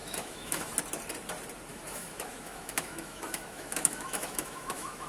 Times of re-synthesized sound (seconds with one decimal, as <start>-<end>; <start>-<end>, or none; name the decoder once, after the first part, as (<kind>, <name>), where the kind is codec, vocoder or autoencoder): 0.0-0.7 (autoencoder, DAC-VAE); 1.7-5.1